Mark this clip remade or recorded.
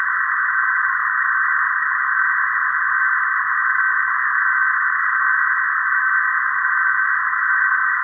recorded